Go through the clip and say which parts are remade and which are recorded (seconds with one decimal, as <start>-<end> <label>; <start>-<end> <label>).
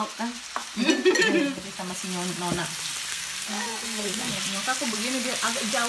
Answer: 0.0-3.1 recorded; 3.1-4.3 remade; 4.3-5.9 recorded